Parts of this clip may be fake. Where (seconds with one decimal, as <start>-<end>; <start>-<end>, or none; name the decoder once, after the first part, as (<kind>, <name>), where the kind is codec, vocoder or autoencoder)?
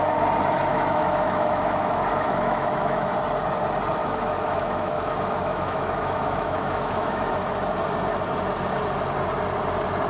0.7-3.1 (autoencoder, DAC-VAE); 4.0-7.3